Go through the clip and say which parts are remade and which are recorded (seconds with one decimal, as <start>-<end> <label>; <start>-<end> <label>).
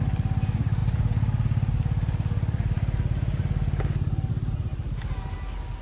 0.0-5.8 recorded